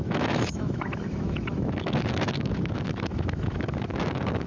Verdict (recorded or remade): remade